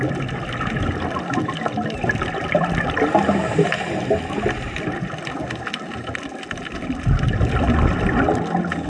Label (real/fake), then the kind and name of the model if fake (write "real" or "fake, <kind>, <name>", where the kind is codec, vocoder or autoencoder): real